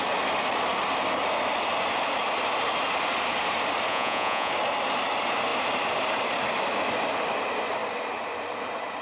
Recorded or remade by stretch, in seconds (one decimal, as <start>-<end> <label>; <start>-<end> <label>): 0.0-3.9 recorded; 3.9-4.5 remade; 4.5-9.0 recorded